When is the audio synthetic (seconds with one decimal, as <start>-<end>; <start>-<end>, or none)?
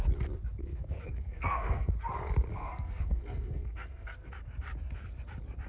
0.6-1.9; 2.5-4.3